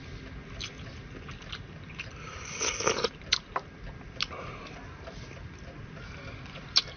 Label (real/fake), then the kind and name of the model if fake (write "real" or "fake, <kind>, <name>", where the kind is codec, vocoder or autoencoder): real